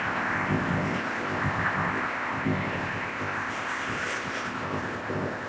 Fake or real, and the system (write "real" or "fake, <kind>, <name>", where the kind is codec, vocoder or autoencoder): fake, codec, ZipCodec